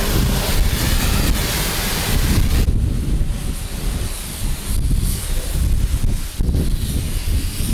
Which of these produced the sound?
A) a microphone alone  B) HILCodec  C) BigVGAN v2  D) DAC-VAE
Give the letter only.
A